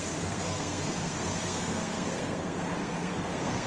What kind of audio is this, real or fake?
fake